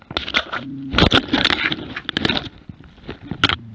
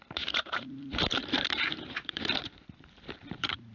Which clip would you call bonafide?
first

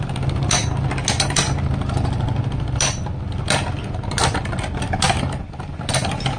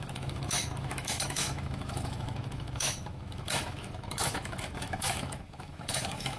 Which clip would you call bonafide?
first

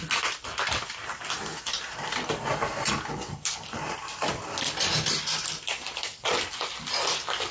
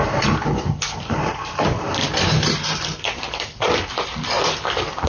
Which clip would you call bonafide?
first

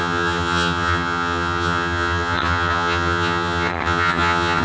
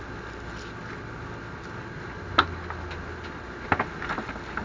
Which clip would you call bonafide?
second